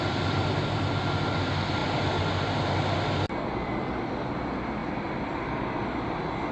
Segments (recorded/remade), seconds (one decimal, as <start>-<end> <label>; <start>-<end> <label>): 0.0-6.5 recorded